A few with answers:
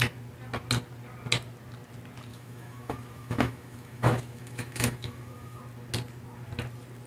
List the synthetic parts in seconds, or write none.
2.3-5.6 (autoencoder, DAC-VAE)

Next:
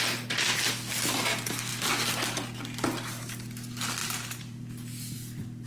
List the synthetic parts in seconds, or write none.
4.0-4.6 (vocoder, BigVGAN v2)

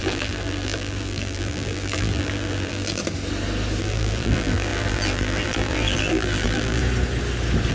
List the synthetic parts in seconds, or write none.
0.0-3.0 (vocoder, BigVGAN v2); 3.8-6.8

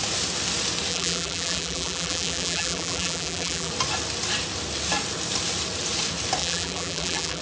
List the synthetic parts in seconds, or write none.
0.9-3.7 (vocoder, BigVGAN v2); 6.4-7.4